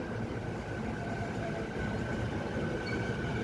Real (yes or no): no